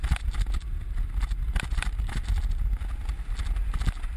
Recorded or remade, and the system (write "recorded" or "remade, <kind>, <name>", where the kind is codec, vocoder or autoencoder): recorded